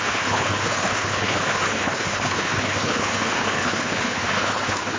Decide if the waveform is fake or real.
fake